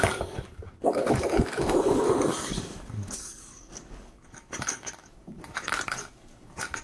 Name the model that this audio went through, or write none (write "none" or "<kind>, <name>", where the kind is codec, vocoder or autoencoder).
codec, DAC